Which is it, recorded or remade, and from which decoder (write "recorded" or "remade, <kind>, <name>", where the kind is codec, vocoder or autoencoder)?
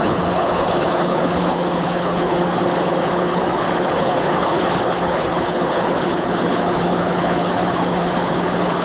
remade, codec, HILCodec